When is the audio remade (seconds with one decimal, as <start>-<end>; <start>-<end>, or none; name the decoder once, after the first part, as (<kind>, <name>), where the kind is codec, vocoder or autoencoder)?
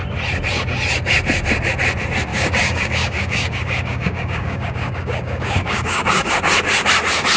2.3-6.3 (codec, DAC)